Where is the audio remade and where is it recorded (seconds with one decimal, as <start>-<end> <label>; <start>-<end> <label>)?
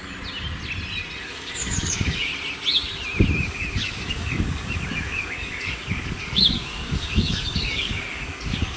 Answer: 0.0-1.2 recorded; 1.2-2.3 remade; 2.3-3.4 recorded; 3.4-8.8 remade